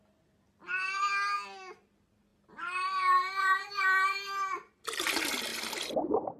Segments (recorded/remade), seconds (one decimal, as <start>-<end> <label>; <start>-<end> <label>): 0.0-2.3 recorded; 2.3-4.7 remade; 4.7-5.5 recorded; 5.5-6.4 remade